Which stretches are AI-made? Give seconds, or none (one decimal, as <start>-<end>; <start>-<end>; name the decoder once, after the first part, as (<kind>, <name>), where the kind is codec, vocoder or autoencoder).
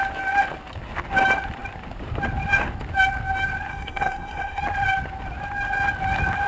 3.7-4.6 (codec, SNAC)